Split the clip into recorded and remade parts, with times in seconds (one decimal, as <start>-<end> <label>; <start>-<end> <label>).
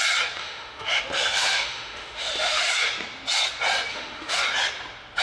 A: 0.0-0.4 recorded; 0.4-2.7 remade; 2.7-3.9 recorded; 3.9-4.4 remade; 4.4-5.2 recorded